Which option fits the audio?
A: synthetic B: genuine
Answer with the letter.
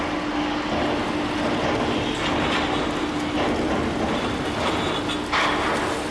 B